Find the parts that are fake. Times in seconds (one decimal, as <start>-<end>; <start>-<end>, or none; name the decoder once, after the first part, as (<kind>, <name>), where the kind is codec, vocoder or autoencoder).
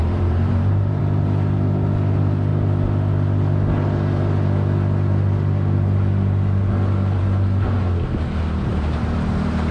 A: 0.0-1.0 (vocoder, BigVGAN v2); 8.7-9.7